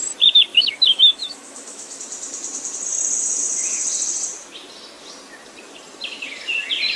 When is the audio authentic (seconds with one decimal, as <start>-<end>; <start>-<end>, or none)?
0.0-0.5; 2.0-7.0